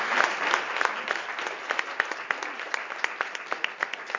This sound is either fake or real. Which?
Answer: real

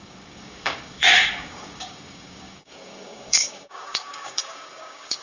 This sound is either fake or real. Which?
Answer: fake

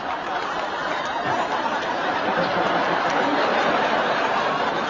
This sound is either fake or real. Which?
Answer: real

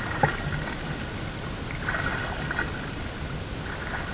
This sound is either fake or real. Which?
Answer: real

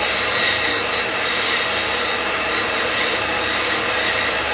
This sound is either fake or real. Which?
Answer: real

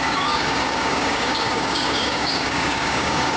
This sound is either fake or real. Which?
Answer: fake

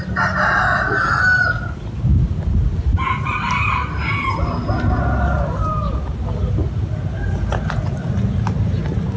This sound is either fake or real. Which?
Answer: real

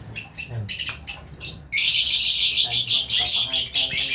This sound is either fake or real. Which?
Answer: real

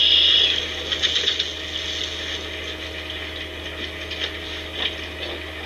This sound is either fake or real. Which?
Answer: real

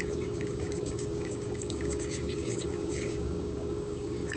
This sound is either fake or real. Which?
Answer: fake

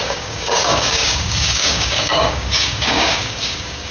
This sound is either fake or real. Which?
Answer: fake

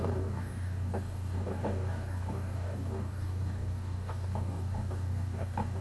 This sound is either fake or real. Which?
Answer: fake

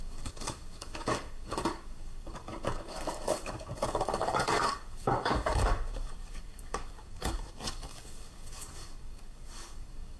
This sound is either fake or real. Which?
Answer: fake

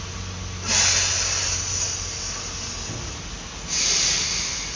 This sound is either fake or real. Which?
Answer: real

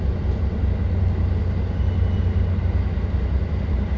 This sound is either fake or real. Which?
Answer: real